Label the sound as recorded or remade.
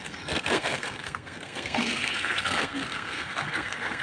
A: remade